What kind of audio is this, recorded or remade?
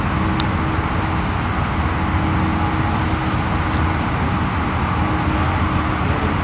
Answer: recorded